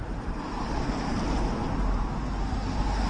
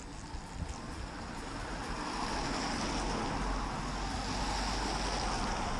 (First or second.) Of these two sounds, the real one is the second